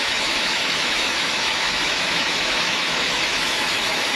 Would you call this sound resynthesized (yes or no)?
yes